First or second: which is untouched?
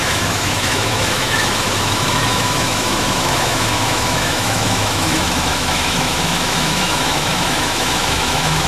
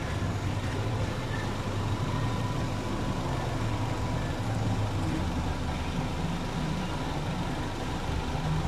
second